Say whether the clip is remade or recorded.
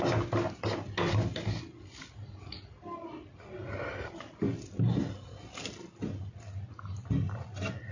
recorded